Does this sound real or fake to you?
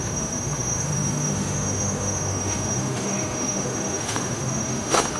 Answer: fake